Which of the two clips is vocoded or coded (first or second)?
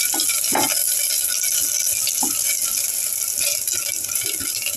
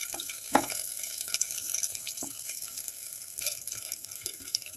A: second